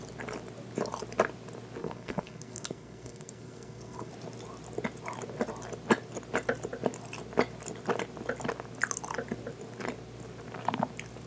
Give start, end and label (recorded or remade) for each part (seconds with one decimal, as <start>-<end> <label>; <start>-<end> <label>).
0.0-1.8 recorded; 1.8-4.1 remade; 4.1-11.3 recorded